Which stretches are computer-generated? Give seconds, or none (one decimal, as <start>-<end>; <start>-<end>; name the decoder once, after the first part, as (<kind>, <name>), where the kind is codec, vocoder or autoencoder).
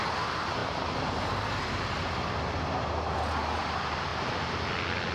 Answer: none